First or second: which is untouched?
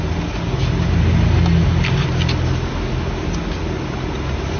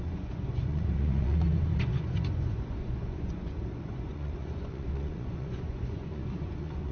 first